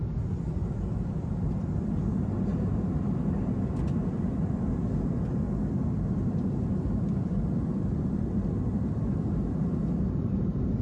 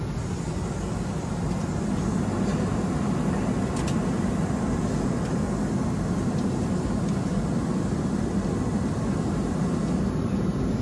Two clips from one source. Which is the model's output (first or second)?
first